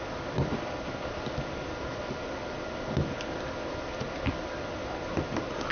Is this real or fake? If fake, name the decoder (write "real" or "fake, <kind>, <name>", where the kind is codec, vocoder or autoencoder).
real